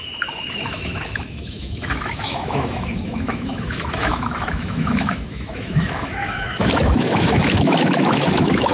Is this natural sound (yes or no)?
no